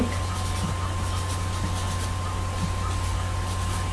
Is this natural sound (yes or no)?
yes